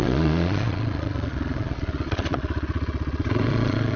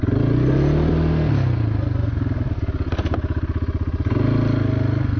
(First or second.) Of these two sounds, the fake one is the first